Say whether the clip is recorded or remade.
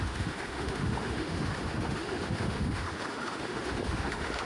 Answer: remade